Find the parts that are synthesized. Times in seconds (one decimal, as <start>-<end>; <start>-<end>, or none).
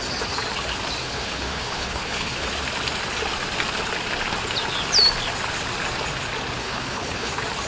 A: 1.0-2.5; 6.6-7.3